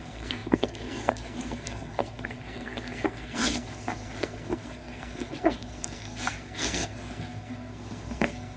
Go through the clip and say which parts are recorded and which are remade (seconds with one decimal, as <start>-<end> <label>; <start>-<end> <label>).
0.0-8.6 remade